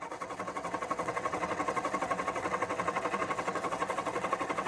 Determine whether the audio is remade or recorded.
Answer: remade